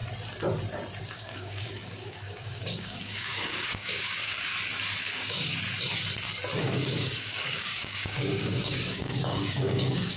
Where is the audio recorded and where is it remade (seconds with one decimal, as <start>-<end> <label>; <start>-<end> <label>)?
0.0-1.2 recorded; 1.2-4.5 remade; 4.5-5.0 recorded; 5.0-5.5 remade; 5.5-6.6 recorded; 6.6-10.2 remade